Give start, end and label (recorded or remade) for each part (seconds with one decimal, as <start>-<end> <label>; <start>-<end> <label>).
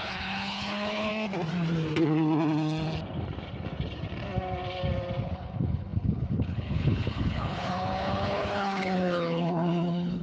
0.0-1.1 remade; 1.1-5.2 recorded; 5.2-10.2 remade